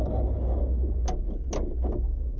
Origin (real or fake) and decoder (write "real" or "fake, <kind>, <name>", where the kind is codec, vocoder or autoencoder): real